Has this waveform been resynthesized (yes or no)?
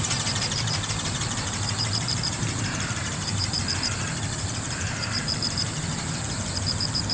yes